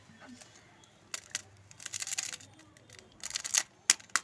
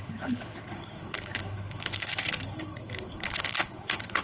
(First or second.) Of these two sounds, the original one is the first